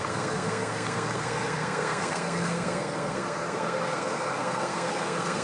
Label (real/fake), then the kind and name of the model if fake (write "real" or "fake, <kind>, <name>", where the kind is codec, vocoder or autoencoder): fake, codec, SNAC